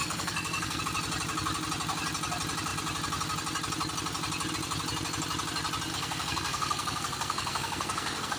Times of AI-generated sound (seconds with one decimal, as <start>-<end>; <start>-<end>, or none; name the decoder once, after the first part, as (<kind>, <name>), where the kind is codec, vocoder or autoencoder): 0.0-0.8 (codec, SNAC); 5.9-8.4